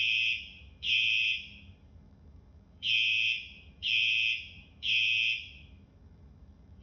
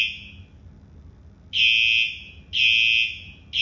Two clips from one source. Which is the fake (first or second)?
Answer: first